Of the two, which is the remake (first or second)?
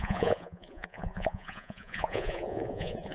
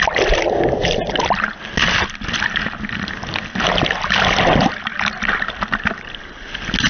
first